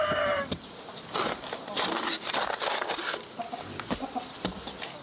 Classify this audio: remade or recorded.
recorded